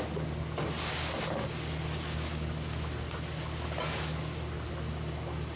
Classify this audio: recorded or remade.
recorded